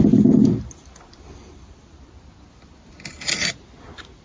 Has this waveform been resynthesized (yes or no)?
no